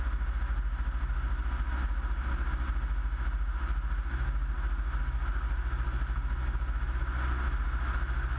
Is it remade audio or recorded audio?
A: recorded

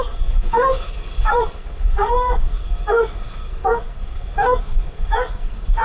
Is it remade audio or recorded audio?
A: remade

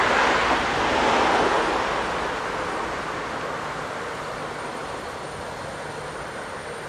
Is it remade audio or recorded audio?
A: recorded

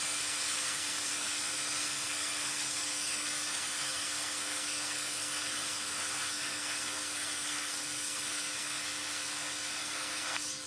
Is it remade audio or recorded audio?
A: remade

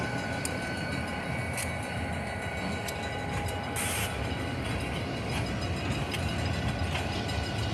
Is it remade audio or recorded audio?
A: recorded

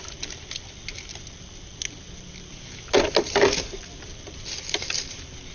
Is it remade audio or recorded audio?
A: recorded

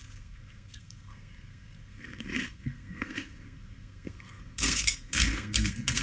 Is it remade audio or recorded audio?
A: remade